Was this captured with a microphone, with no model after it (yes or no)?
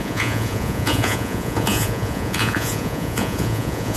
no